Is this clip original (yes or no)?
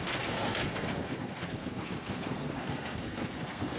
no